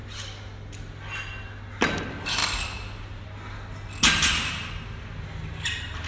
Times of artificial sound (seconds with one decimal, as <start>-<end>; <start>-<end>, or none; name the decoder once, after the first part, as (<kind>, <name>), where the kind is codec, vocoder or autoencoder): none